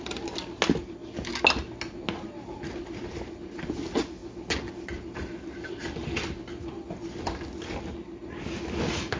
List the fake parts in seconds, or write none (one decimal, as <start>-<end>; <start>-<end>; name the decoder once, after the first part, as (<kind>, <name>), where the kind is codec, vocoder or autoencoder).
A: none